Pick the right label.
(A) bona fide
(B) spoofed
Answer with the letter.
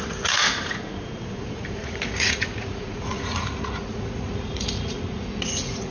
B